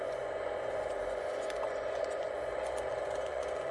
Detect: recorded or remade remade